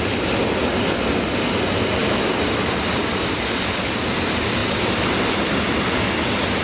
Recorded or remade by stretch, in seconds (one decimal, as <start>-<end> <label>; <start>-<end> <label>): 0.0-6.6 recorded